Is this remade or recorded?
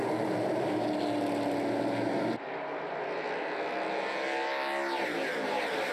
recorded